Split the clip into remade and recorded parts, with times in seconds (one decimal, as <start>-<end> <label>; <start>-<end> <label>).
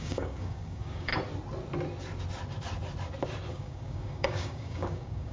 0.0-1.1 remade; 1.1-3.5 recorded; 3.5-5.3 remade